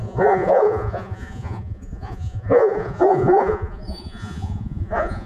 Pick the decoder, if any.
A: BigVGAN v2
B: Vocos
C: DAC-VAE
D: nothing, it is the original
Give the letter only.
B